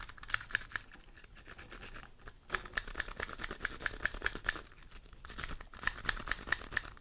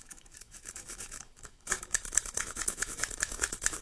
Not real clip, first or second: second